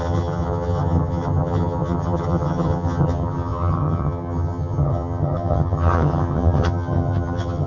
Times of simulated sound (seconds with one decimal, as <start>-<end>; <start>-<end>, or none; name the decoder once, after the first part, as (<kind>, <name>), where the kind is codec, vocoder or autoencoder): 0.0-7.7 (vocoder, HiFi-GAN)